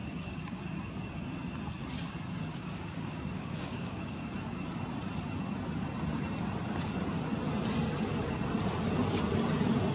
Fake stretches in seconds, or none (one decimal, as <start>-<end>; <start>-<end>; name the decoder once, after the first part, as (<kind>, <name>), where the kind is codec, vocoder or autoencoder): 0.0-0.6 (codec, DAC); 2.5-4.3